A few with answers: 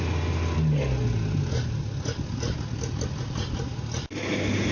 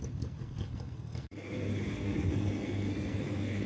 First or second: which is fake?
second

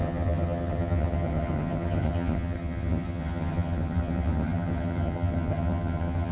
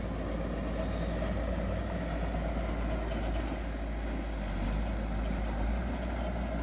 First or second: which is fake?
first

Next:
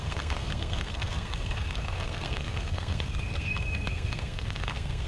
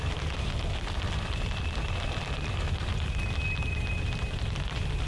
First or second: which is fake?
first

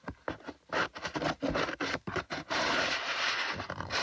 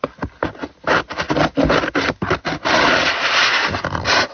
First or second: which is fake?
first